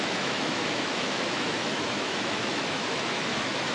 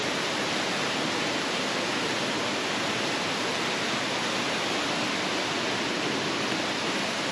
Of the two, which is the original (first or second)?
second